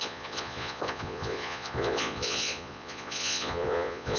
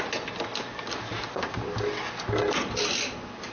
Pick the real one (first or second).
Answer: second